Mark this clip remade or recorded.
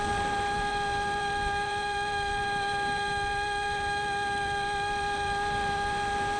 remade